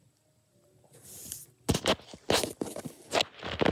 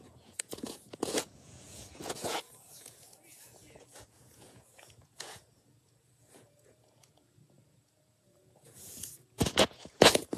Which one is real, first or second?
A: first